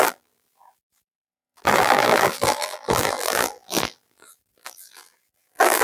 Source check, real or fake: fake